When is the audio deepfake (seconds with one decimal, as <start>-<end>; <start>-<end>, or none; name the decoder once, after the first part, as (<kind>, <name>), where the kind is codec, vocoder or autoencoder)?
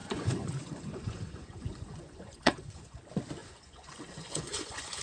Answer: 0.0-3.0 (vocoder, Vocos); 3.4-5.0